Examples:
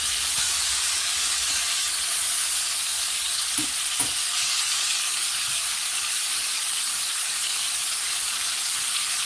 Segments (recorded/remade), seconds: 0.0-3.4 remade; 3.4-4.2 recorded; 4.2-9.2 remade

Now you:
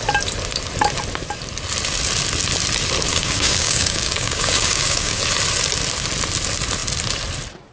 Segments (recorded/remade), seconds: 0.0-3.1 recorded; 3.1-5.2 remade; 5.2-7.7 recorded

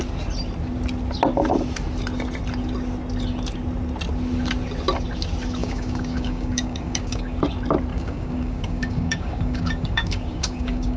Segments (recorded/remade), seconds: 0.0-5.6 recorded; 5.6-7.4 remade; 7.4-7.9 recorded; 7.9-11.0 remade

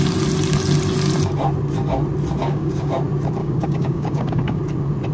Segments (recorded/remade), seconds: 0.0-2.4 recorded; 2.4-3.0 remade; 3.0-3.4 recorded; 3.4-4.6 remade; 4.6-5.1 recorded

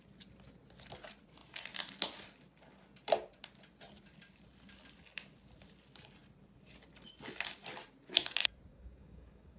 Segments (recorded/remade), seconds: 0.0-8.7 recorded; 8.7-9.6 remade

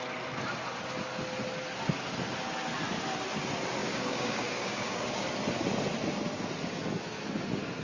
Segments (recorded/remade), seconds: 0.0-3.8 recorded; 3.8-5.3 remade; 5.3-7.8 recorded

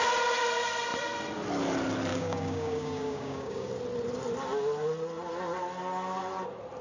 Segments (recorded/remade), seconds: 0.0-2.1 recorded; 2.1-3.7 remade; 3.7-6.8 recorded